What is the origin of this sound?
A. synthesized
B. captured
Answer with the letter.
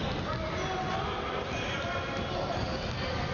B